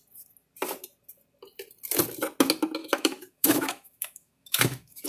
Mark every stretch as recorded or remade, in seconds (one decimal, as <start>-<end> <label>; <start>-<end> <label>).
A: 0.0-2.8 recorded; 2.8-5.1 remade